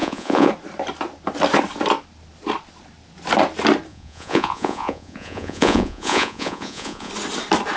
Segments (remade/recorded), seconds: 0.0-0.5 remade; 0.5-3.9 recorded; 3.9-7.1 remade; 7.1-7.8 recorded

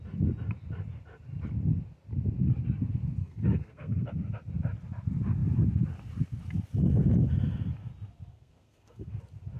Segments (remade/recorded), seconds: 0.0-3.2 recorded; 3.2-4.1 remade; 4.1-8.3 recorded; 8.3-9.2 remade; 9.2-9.6 recorded

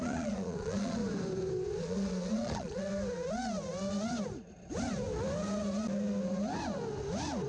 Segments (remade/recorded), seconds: 0.0-1.0 remade; 1.0-1.8 recorded; 1.8-2.9 remade; 2.9-7.5 recorded

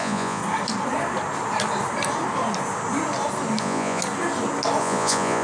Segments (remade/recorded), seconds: 0.0-0.4 remade; 0.4-3.6 recorded; 3.6-4.0 remade; 4.0-4.8 recorded; 4.8-5.4 remade

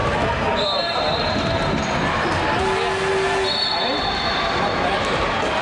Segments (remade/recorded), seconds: 0.0-5.6 recorded